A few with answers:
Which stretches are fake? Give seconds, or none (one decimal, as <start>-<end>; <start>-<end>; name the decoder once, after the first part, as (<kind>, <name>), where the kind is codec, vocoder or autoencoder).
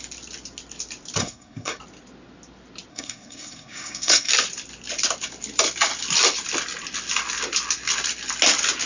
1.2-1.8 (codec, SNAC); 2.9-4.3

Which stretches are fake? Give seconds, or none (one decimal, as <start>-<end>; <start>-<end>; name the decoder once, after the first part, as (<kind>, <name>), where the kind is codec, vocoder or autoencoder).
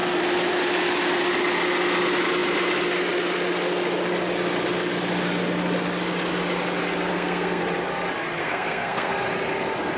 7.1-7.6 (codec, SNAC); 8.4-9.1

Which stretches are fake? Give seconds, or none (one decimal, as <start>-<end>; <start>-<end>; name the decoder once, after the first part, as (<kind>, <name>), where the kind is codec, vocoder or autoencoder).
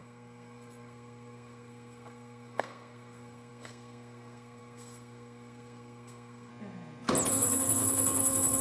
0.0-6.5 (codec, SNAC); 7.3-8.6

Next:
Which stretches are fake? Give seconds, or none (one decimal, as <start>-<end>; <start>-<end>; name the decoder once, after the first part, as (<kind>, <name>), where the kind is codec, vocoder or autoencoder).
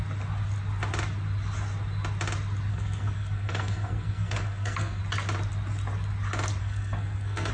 2.7-5.0 (codec, SNAC); 6.6-7.5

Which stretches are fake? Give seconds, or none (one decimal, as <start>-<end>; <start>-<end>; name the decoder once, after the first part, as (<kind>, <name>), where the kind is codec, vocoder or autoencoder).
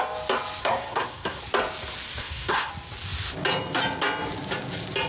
0.6-1.4 (codec, SNAC); 2.2-2.7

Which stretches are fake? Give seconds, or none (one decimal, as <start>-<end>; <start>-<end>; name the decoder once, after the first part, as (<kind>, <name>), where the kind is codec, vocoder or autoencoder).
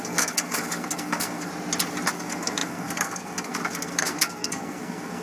0.0-1.5 (codec, SNAC); 2.1-5.2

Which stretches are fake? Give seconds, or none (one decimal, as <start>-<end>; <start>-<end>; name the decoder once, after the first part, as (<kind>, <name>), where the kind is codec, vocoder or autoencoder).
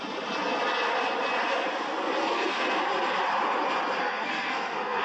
2.2-2.8 (codec, SNAC); 4.0-5.0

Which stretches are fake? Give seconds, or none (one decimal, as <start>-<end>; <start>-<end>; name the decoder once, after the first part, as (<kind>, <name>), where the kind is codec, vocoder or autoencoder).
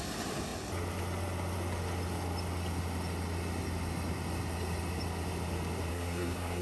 5.9-6.6 (codec, SNAC)